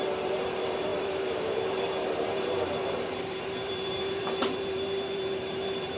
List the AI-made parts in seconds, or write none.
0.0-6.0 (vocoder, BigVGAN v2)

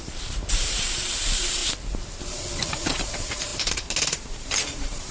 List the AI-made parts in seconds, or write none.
0.0-1.6 (vocoder, BigVGAN v2); 2.7-5.1